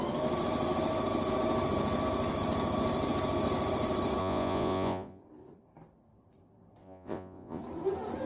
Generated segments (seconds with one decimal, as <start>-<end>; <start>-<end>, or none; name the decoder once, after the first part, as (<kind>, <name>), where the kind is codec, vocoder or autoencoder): 4.2-5.2 (vocoder, Vocos); 6.8-7.6